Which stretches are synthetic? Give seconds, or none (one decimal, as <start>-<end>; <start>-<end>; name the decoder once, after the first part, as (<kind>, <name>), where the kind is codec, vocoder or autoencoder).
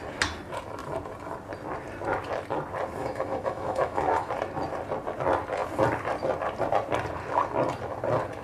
3.0-4.3 (autoencoder, DAC-VAE)